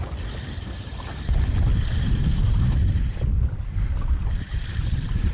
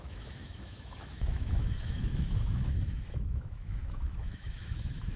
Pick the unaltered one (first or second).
first